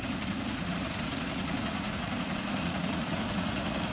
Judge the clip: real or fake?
fake